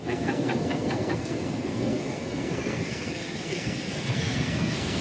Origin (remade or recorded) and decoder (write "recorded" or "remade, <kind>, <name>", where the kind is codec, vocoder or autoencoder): remade, codec, SNAC